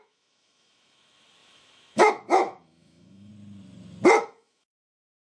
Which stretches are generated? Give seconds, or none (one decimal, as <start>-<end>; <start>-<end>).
0.0-3.3; 4.2-5.4